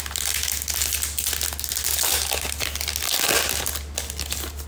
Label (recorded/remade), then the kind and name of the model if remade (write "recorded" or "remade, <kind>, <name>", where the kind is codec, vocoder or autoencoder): recorded